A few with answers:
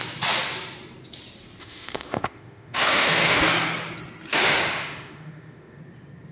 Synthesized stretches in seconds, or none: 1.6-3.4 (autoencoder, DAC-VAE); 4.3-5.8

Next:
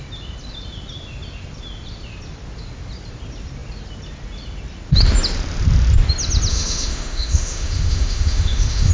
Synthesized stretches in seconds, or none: 6.5-8.9 (autoencoder, DAC-VAE)

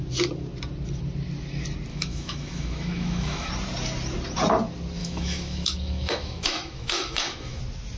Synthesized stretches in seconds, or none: 1.9-3.5 (autoencoder, DAC-VAE); 5.0-7.6

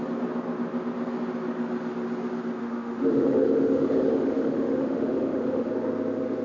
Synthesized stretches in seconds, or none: 2.6-5.7 (autoencoder, DAC-VAE)